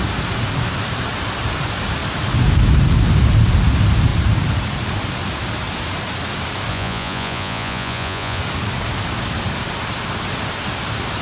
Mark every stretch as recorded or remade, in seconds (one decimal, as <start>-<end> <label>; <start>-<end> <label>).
0.0-6.7 recorded; 6.7-8.4 remade; 8.4-11.2 recorded